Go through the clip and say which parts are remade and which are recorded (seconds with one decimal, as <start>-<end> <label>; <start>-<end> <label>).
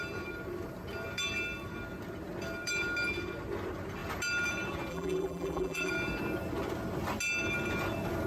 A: 0.0-4.9 recorded; 4.9-5.9 remade; 5.9-8.3 recorded